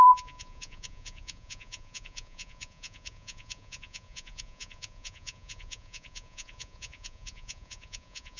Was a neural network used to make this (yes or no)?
yes